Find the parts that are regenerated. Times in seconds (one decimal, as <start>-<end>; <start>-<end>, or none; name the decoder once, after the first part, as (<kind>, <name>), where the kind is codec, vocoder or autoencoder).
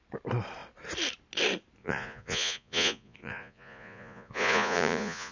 1.8-5.3 (vocoder, Vocos)